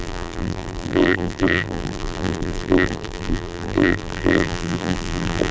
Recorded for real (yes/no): no